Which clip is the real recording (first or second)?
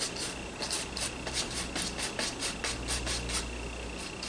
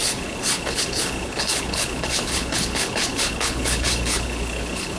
first